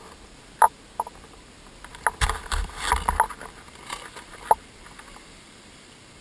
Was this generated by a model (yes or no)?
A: no